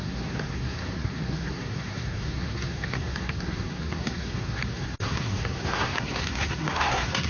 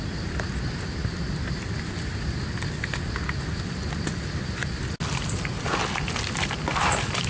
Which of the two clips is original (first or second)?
second